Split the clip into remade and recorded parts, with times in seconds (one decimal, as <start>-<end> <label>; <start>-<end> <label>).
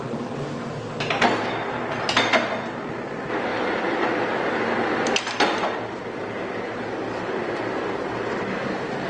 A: 0.0-3.5 recorded; 3.5-4.1 remade; 4.1-9.1 recorded